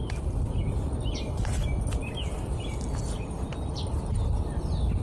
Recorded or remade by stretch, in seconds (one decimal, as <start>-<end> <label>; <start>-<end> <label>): 0.0-3.5 recorded; 3.5-5.0 remade